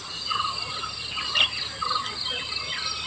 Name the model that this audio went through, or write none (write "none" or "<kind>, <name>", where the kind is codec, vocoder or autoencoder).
none